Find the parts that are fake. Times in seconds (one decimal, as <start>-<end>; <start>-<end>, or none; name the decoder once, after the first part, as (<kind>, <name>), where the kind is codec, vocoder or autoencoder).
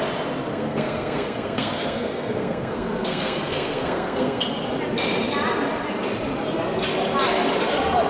0.5-4.4 (codec, SNAC)